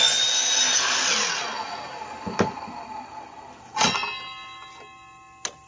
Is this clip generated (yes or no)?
no